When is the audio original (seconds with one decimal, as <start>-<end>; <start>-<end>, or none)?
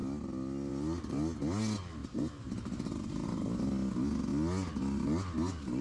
0.0-2.0; 2.7-5.8